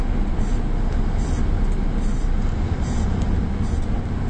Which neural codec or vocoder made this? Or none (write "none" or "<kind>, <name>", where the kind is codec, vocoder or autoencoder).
none